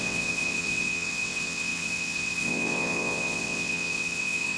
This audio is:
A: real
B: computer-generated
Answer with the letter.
B